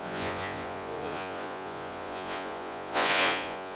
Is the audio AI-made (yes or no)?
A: yes